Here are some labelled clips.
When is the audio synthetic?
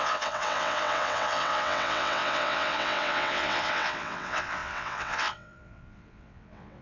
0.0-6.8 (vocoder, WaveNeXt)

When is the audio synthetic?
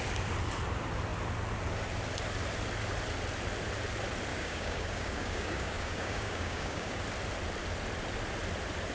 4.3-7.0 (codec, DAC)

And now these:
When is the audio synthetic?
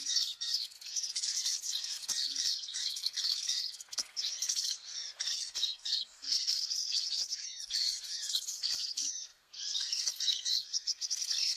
0.0-11.6 (codec, SNAC)